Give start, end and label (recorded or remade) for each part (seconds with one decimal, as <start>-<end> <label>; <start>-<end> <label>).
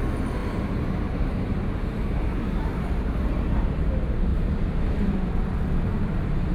0.0-0.4 recorded; 0.4-3.8 remade; 3.8-4.3 recorded; 4.3-4.9 remade; 4.9-6.5 recorded